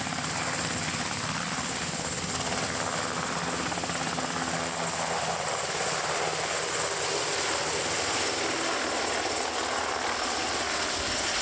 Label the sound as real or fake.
real